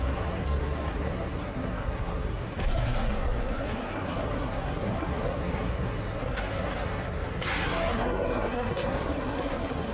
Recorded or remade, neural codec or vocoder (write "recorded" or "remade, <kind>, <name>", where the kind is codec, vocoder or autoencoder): remade, codec, SNAC